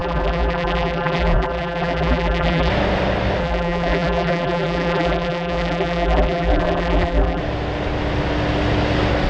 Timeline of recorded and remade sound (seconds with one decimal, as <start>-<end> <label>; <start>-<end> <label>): 0.0-2.7 remade; 2.7-3.4 recorded; 3.4-7.4 remade; 7.4-9.3 recorded